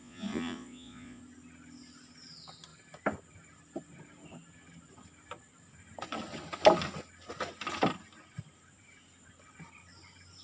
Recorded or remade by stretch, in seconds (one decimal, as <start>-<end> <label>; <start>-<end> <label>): 0.0-1.2 remade; 1.2-10.4 recorded